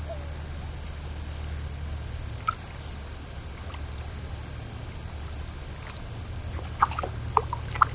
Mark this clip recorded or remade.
recorded